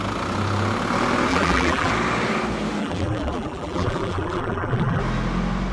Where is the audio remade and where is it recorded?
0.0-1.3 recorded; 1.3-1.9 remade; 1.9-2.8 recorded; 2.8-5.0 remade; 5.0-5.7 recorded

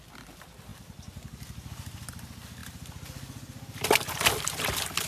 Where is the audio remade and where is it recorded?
0.0-5.1 recorded

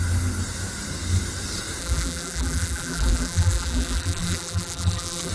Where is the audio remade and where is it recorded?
0.0-1.8 recorded; 1.8-5.3 remade

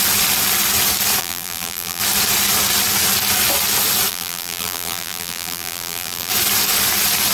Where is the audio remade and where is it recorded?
0.0-1.2 recorded; 1.2-2.0 remade; 2.0-4.1 recorded; 4.1-6.3 remade; 6.3-7.3 recorded